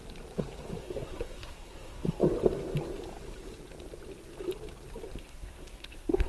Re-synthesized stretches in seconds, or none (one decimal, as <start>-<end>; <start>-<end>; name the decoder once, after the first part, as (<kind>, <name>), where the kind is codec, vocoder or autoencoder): 0.8-2.2 (codec, SNAC); 5.2-6.3